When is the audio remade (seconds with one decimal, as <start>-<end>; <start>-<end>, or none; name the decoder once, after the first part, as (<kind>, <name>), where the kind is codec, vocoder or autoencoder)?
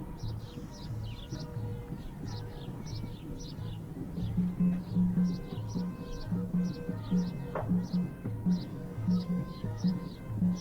8.7-9.9 (codec, DAC)